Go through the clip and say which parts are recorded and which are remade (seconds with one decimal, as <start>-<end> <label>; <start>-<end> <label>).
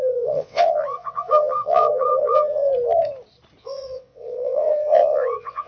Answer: 0.0-2.6 remade; 2.6-3.6 recorded; 3.6-5.7 remade